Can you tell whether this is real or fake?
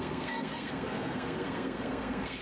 fake